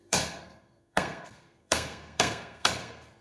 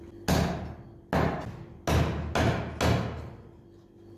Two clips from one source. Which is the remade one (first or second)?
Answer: first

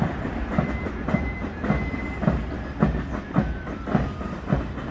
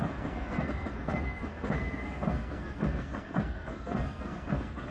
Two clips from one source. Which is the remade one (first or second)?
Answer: second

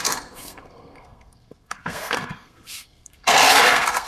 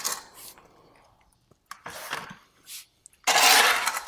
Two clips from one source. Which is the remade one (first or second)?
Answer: first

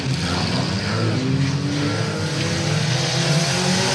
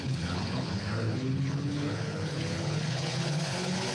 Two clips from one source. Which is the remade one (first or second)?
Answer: second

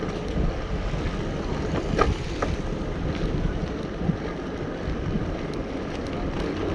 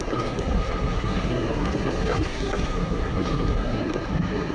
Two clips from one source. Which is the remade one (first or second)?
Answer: second